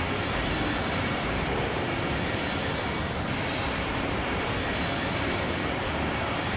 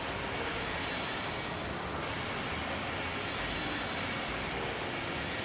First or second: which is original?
second